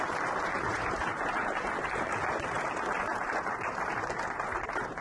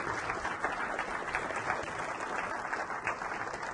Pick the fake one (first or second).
first